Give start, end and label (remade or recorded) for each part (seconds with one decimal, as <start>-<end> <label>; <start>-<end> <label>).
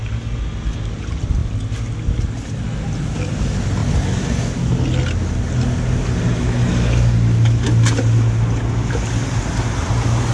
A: 0.0-10.3 recorded